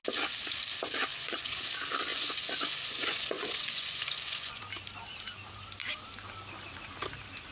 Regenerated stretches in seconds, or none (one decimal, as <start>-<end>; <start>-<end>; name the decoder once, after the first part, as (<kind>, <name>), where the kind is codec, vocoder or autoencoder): 1.1-1.6 (vocoder, Vocos); 2.1-4.6